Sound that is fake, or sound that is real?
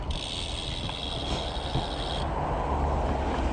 real